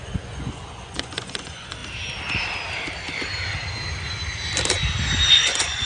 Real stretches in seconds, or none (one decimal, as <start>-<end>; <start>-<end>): 1.8-5.3